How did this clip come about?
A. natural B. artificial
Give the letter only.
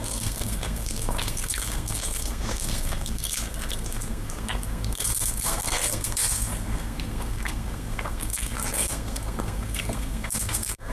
B